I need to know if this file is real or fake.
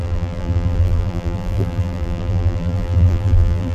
fake